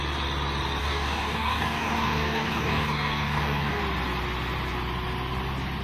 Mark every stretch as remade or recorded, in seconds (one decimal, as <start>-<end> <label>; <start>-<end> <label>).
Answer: 0.0-0.8 recorded; 0.8-3.8 remade; 3.8-5.8 recorded